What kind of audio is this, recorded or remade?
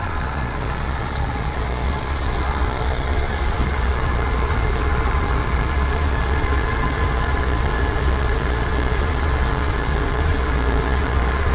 remade